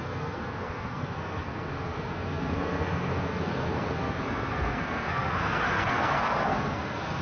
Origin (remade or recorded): remade